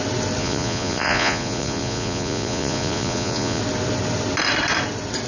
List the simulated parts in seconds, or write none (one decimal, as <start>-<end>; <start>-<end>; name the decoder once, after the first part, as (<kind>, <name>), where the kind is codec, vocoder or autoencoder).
0.4-3.6 (vocoder, Vocos)